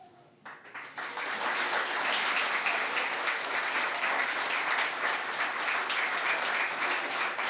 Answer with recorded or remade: recorded